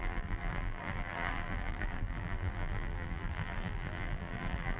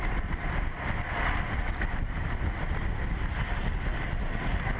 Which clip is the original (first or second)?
second